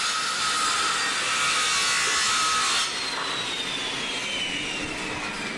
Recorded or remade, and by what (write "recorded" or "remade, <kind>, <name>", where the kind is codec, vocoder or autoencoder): recorded